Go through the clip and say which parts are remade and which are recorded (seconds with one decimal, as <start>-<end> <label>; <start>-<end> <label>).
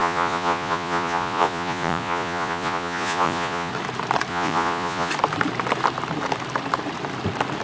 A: 0.0-3.7 remade; 3.7-4.3 recorded; 4.3-5.1 remade; 5.1-7.6 recorded